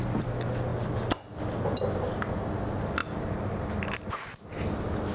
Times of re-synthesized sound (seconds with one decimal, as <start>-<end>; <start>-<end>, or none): none